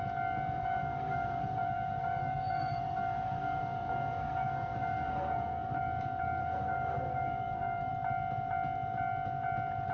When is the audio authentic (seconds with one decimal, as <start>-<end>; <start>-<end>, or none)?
0.0-0.6; 5.8-6.4; 7.9-9.9